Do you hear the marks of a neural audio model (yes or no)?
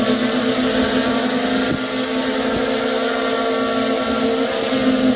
no